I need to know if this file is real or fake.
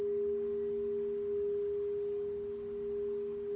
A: real